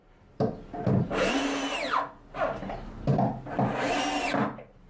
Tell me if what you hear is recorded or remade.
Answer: recorded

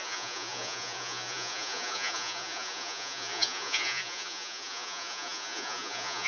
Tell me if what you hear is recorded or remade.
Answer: remade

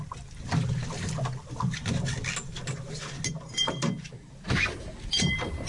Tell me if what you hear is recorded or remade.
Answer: recorded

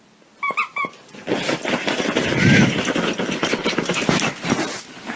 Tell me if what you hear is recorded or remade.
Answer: recorded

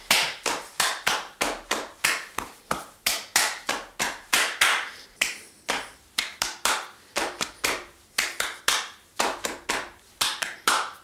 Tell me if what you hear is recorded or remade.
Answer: remade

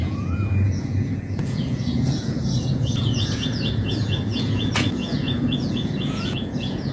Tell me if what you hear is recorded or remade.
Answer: remade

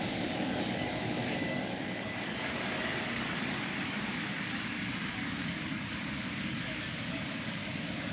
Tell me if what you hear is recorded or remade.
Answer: remade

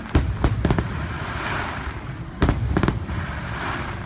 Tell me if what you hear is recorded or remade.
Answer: recorded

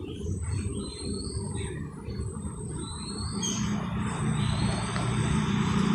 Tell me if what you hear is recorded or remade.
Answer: remade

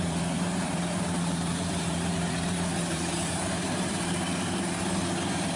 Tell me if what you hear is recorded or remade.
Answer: remade